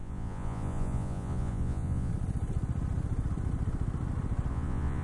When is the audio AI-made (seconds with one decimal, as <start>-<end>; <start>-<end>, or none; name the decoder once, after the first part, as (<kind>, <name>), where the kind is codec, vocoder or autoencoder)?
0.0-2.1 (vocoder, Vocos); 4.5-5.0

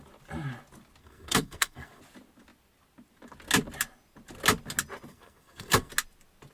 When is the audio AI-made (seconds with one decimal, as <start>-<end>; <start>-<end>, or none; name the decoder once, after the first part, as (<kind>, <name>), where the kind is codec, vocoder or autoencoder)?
1.0-2.0 (codec, SNAC); 5.1-5.9

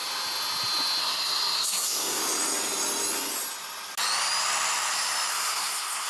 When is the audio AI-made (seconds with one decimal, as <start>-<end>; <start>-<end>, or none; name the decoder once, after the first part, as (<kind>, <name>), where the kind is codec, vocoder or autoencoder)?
1.0-2.2 (codec, SNAC); 5.3-6.1

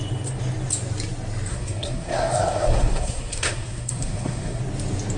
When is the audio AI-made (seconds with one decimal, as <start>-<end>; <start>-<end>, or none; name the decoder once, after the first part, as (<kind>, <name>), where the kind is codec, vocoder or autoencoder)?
1.5-4.6 (codec, SNAC)

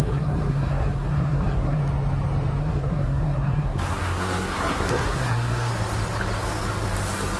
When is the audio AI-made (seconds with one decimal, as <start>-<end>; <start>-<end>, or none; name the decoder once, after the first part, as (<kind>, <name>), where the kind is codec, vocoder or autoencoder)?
0.0-1.8 (codec, SNAC); 2.6-5.7